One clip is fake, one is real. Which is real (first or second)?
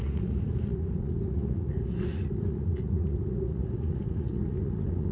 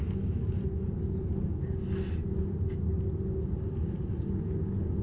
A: second